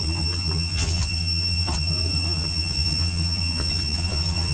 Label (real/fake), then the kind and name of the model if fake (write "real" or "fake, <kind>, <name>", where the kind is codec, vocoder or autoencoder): fake, vocoder, Vocos